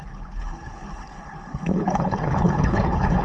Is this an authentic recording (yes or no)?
no